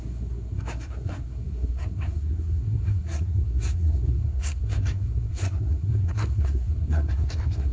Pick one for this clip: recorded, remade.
remade